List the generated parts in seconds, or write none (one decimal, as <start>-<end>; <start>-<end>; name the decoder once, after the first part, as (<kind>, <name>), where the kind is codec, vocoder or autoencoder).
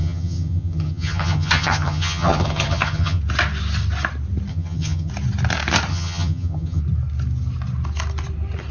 0.0-3.2 (vocoder, HiFi-GAN); 4.5-5.1; 5.9-6.8